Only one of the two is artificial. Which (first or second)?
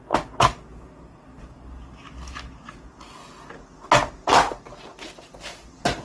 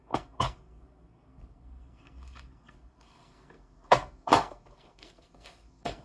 second